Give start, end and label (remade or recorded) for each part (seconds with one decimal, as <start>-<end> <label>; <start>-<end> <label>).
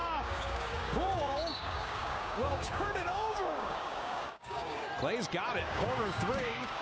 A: 0.0-4.9 remade; 4.9-5.6 recorded; 5.6-6.8 remade